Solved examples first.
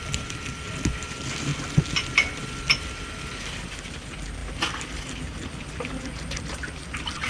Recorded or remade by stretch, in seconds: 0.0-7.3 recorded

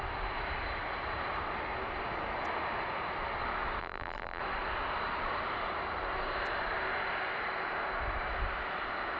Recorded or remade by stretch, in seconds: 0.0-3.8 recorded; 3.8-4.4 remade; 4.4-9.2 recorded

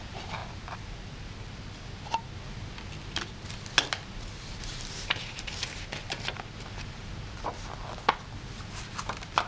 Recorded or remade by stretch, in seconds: 0.0-0.4 remade; 0.4-4.5 recorded; 4.5-7.5 remade; 7.5-9.5 recorded

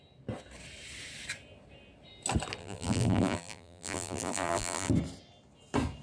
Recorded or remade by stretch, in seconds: 0.0-2.6 recorded; 2.6-4.9 remade; 4.9-6.0 recorded